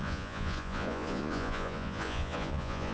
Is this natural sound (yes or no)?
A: no